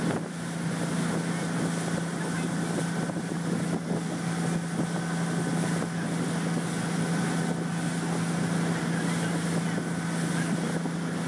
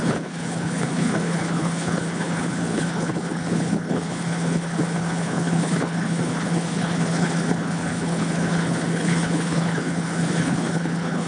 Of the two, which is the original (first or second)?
first